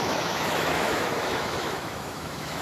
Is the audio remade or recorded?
remade